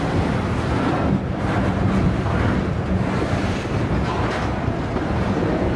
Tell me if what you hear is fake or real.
fake